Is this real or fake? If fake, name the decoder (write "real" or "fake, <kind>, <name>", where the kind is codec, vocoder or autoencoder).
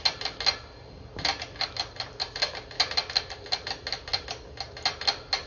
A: real